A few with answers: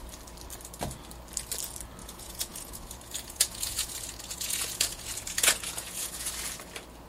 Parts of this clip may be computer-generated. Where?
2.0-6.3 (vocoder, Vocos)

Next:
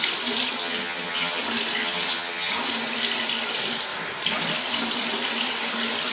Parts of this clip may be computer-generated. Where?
0.6-1.4 (vocoder, HiFi-GAN); 1.8-2.5

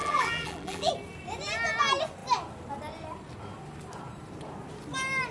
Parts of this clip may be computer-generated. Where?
0.0-0.9 (vocoder, BigVGAN v2)

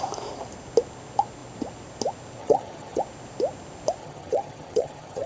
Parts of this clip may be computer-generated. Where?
2.4-3.0 (vocoder, HiFi-GAN); 4.0-5.3

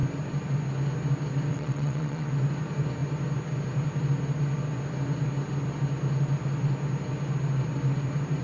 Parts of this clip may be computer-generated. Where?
1.5-2.3 (vocoder, WaveNeXt)

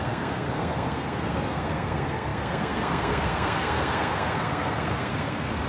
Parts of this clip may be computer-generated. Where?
0.0-5.7 (codec, SNAC)

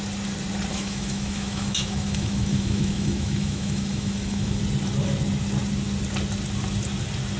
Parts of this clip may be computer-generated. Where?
0.7-4.6 (autoencoder, DAC-VAE)

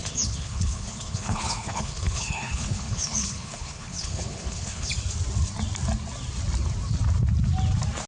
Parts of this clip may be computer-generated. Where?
0.0-4.9 (codec, HILCodec)